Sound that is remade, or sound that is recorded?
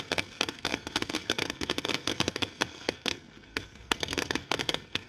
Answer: remade